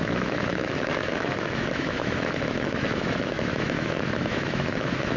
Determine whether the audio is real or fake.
fake